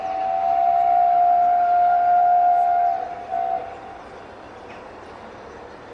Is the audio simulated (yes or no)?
no